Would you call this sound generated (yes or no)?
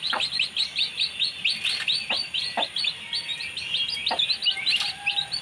no